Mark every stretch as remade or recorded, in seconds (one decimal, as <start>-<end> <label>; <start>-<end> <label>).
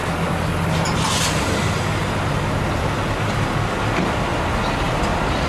0.0-4.3 recorded; 4.3-5.0 remade; 5.0-5.5 recorded